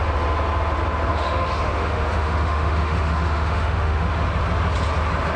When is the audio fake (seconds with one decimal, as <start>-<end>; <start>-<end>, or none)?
1.1-4.3